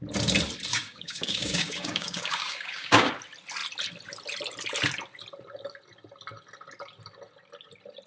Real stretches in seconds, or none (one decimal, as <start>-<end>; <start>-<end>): 0.0-0.7; 3.1-8.1